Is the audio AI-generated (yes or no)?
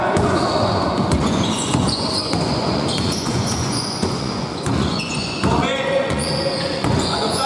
yes